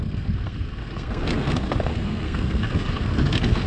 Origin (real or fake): fake